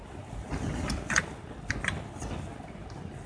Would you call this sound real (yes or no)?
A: yes